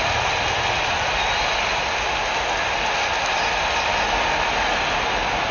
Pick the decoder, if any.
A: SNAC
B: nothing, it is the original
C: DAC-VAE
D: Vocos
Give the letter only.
B